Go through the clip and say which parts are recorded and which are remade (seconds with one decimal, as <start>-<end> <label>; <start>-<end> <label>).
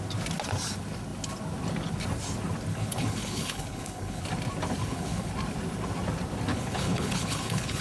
0.0-2.7 recorded; 2.7-4.2 remade; 4.2-4.8 recorded; 4.8-5.3 remade; 5.3-6.5 recorded; 6.5-7.8 remade